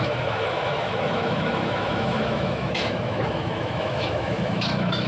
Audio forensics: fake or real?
fake